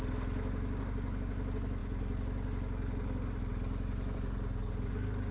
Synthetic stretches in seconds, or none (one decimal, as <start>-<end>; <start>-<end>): none